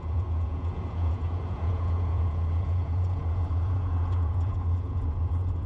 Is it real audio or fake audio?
fake